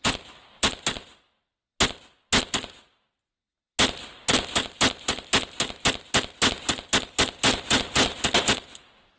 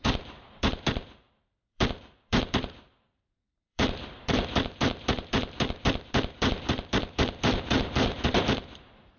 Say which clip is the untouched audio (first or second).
first